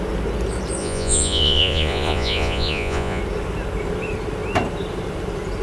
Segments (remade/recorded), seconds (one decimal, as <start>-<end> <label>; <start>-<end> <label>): 0.0-0.8 recorded; 0.8-3.2 remade; 3.2-5.6 recorded